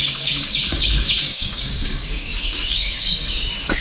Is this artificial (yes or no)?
yes